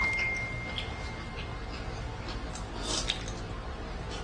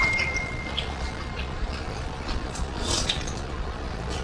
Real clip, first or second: first